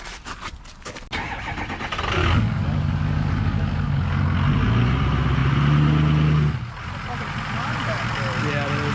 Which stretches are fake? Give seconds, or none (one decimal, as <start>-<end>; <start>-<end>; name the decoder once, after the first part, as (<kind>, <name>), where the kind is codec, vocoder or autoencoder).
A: 2.2-4.2 (codec, DAC)